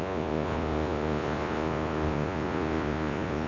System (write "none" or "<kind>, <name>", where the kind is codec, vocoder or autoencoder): vocoder, Vocos